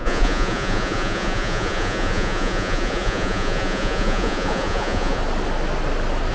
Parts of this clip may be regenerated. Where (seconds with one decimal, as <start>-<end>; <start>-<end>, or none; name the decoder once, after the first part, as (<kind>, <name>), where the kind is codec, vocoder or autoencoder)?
0.0-5.2 (vocoder, Vocos)